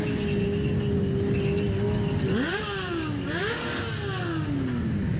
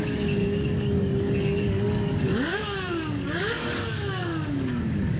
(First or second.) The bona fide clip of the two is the first